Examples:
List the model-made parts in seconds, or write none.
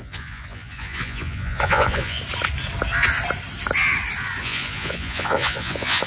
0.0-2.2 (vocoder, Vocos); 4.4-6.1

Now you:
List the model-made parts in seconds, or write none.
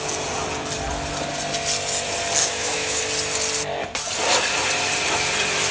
2.4-3.0 (autoencoder, DAC-VAE)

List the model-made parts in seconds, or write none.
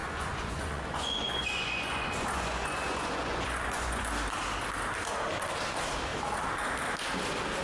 0.0-4.1 (vocoder, Vocos)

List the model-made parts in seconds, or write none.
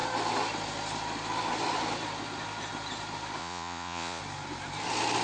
3.4-4.2 (vocoder, Vocos)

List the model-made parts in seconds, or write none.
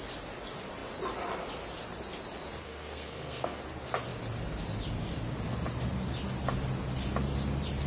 2.6-3.6 (codec, SNAC)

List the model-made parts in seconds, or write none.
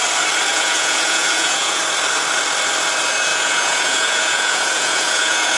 0.5-1.8 (vocoder, Vocos); 3.3-5.6